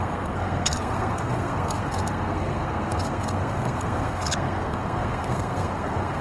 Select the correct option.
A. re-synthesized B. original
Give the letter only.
A